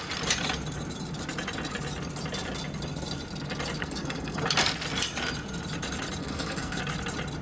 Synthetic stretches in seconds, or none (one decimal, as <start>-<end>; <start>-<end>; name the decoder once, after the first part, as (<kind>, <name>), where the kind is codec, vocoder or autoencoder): 3.8-4.4 (codec, SNAC); 6.2-6.8